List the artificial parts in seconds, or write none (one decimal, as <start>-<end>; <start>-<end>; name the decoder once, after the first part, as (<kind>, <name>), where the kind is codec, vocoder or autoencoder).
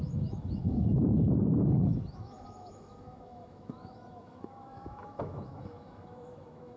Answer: 0.0-6.8 (autoencoder, DAC-VAE)